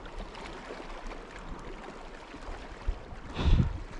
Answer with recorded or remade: recorded